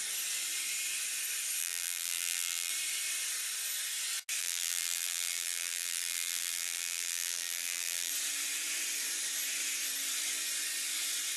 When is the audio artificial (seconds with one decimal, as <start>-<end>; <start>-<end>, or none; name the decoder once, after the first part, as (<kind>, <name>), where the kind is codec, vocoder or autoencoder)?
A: 1.6-2.7 (vocoder, BigVGAN v2); 4.4-8.1